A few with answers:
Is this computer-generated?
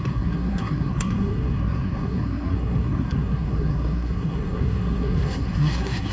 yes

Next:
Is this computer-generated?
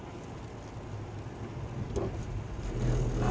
no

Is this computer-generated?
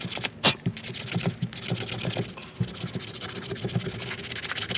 no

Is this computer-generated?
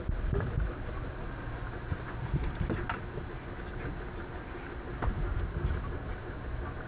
no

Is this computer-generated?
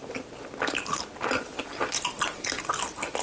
no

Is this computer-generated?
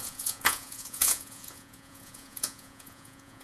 yes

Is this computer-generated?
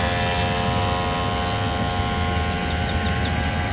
no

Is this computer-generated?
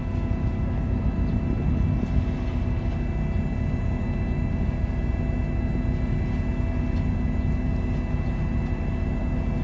no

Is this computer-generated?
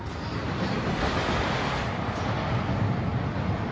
no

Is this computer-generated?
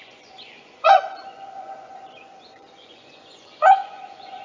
yes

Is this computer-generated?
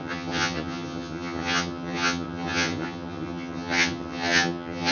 yes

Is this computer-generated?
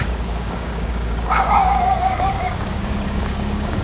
yes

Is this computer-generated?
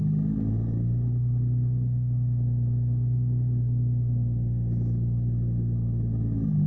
no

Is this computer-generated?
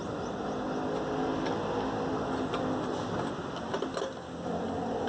no